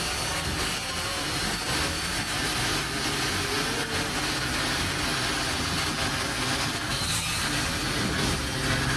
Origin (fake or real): real